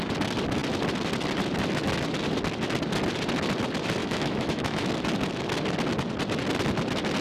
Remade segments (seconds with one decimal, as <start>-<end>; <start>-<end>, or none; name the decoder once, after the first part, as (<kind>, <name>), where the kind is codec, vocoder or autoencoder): 4.0-4.9 (autoencoder, DAC-VAE)